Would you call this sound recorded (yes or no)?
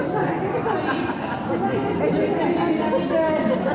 yes